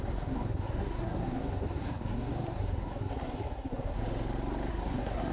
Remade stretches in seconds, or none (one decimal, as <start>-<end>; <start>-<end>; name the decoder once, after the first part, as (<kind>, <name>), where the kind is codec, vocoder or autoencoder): 0.0-4.0 (codec, SNAC); 4.7-5.3